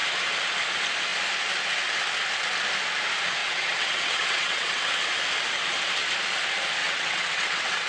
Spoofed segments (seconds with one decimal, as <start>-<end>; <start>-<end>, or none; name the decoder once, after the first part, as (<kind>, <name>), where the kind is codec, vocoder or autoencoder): 3.4-5.1 (vocoder, WaveNeXt); 6.8-7.9